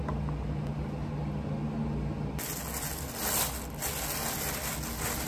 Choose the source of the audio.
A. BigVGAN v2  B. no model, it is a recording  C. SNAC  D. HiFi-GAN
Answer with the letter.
B